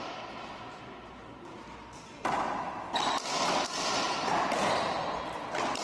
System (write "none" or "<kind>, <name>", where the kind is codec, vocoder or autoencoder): none